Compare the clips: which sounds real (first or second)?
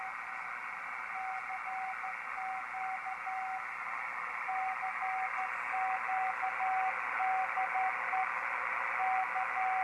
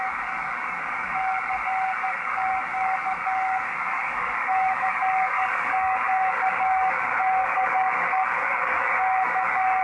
first